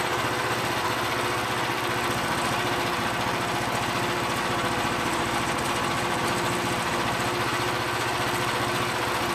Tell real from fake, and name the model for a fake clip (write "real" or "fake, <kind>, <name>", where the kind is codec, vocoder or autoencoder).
real